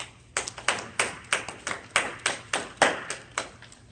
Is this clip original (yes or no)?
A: yes